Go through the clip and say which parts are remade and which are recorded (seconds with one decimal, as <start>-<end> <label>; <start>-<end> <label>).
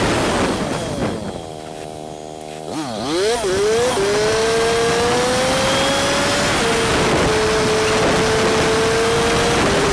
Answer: 0.0-9.9 recorded